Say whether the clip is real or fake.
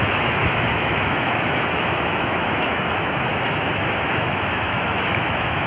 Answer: fake